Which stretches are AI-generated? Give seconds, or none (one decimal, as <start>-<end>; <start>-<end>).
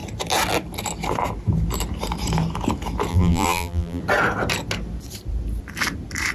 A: 3.1-4.0